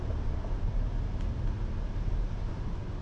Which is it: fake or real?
real